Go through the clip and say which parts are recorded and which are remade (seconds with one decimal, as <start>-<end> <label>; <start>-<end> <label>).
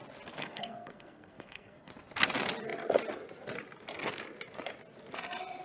0.0-0.4 recorded; 0.4-1.9 remade; 1.9-5.6 recorded